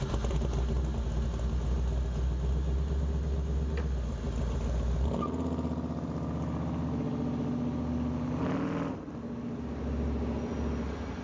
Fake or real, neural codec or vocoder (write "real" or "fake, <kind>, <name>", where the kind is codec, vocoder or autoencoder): real